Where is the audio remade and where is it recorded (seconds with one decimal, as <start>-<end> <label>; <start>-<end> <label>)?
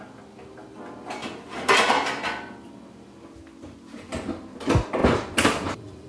0.0-5.0 recorded; 5.0-6.1 remade